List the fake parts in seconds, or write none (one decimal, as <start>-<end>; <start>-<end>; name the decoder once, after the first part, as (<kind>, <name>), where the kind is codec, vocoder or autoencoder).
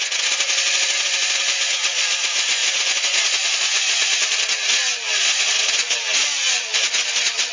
0.0-7.5 (vocoder, Vocos)